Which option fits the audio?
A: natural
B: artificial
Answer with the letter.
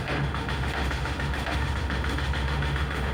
B